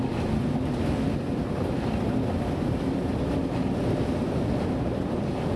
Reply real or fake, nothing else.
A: real